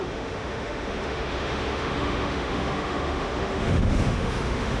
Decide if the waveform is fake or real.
fake